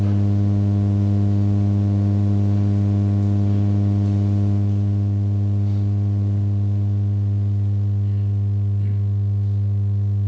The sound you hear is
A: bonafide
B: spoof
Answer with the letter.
A